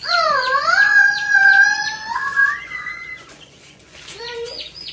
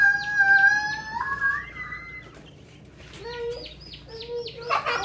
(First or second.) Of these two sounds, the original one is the second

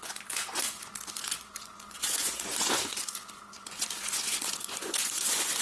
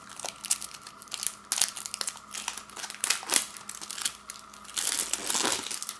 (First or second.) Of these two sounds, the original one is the second